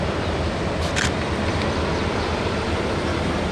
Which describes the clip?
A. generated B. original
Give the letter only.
A